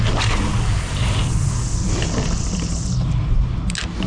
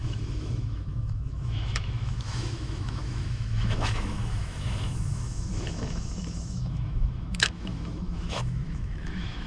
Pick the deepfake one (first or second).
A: second